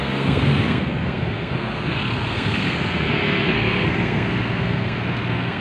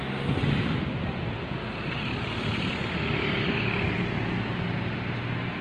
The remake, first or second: first